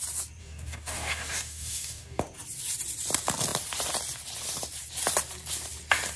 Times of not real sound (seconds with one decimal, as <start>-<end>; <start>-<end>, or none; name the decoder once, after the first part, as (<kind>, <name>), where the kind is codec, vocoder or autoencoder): 0.4-2.2 (codec, DAC)